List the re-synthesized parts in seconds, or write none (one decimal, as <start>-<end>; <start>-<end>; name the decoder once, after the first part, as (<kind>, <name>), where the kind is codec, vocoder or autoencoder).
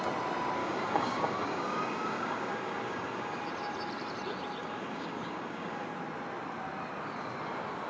0.6-3.4 (codec, DAC); 4.6-5.8